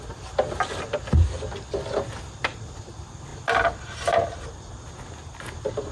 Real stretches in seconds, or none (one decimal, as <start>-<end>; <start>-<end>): 0.0-5.9